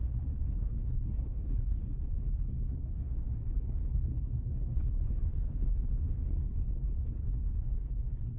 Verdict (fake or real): fake